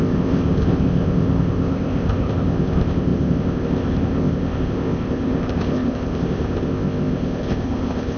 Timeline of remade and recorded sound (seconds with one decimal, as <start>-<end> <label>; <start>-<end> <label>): 0.0-8.2 remade